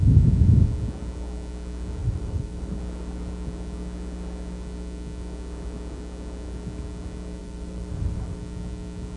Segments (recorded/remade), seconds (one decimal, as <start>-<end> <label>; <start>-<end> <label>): 0.0-2.0 recorded; 2.0-2.8 remade; 2.8-7.4 recorded; 7.4-8.4 remade; 8.4-9.2 recorded